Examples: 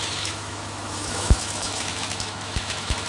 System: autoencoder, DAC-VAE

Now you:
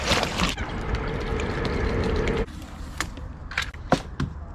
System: none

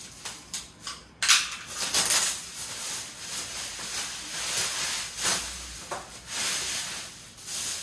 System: none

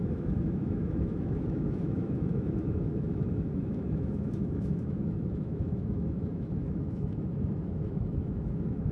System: autoencoder, DAC-VAE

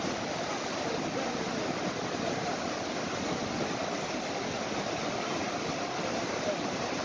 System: none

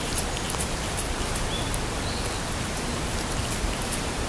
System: none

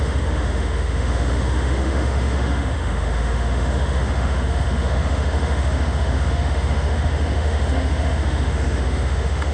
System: autoencoder, DAC-VAE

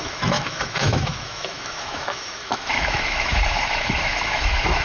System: autoencoder, DAC-VAE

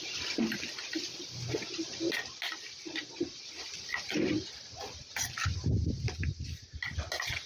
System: none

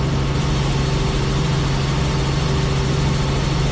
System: none